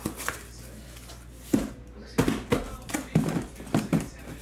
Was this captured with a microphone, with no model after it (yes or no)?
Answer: yes